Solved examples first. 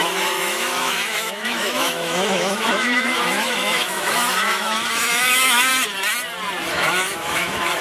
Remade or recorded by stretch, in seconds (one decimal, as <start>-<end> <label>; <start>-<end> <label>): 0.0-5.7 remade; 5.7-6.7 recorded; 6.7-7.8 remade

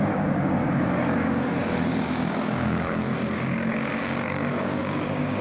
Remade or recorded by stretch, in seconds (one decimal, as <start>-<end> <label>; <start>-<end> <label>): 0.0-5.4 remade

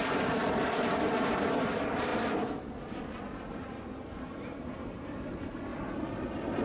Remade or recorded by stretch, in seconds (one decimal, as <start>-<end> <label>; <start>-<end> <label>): 0.0-0.4 remade; 0.4-1.1 recorded; 1.1-2.1 remade; 2.1-2.9 recorded; 2.9-5.7 remade; 5.7-6.6 recorded

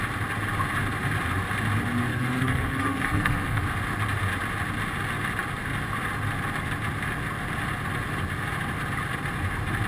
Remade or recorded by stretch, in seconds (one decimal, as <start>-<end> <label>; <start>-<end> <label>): 0.0-2.1 recorded; 2.1-3.6 remade; 3.6-9.9 recorded

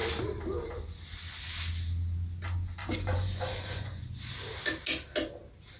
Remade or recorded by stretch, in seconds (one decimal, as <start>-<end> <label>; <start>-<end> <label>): 0.0-2.8 recorded; 2.8-4.3 remade; 4.3-5.8 recorded